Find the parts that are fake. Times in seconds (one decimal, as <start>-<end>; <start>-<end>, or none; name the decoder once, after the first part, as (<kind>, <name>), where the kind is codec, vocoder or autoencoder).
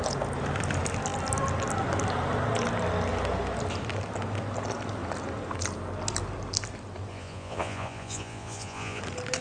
7.1-9.0 (vocoder, Vocos)